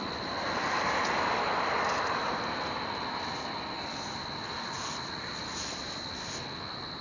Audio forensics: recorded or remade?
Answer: recorded